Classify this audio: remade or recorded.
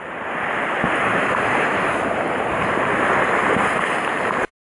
recorded